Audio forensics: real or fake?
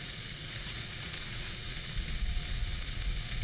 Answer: fake